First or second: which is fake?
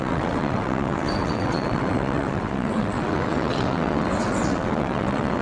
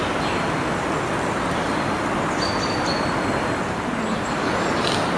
first